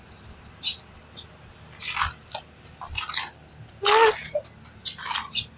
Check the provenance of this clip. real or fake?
real